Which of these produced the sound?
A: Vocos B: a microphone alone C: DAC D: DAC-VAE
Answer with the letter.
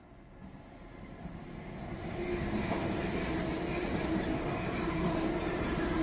B